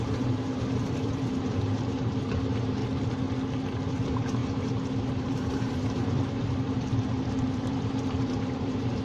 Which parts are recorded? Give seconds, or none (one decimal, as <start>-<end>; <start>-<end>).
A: 2.8-3.9